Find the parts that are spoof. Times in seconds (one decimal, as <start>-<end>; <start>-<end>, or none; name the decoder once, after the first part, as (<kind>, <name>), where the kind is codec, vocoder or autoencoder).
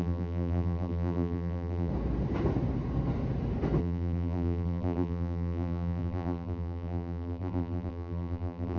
0.0-1.9 (vocoder, BigVGAN v2); 3.8-8.8